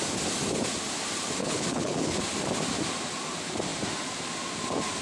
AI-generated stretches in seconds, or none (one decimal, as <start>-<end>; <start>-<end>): 1.4-2.2